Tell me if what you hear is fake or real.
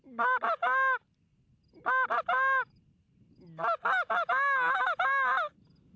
real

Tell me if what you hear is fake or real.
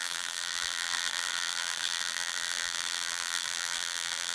fake